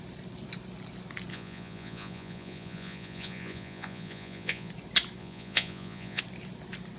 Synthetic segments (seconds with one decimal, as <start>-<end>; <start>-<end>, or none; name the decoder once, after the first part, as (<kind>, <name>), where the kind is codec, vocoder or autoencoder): 1.3-4.7 (vocoder, Vocos); 5.2-6.2